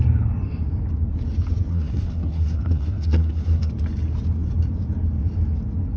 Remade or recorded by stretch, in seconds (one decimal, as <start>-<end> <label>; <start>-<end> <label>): 0.0-1.7 recorded; 1.7-3.7 remade; 3.7-6.0 recorded